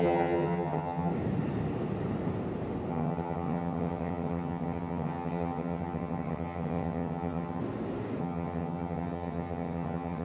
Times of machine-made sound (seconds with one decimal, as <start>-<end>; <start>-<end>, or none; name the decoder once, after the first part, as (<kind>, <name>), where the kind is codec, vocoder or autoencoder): 0.0-1.1 (vocoder, HiFi-GAN); 2.9-7.6; 8.2-10.2